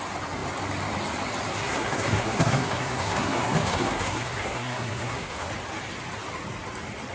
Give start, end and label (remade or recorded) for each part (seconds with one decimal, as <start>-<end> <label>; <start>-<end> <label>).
0.0-1.5 recorded; 1.5-5.5 remade; 5.5-7.1 recorded